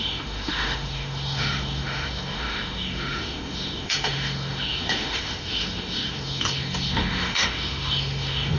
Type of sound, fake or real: fake